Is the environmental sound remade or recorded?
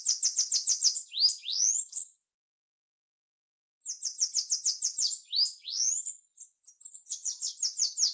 recorded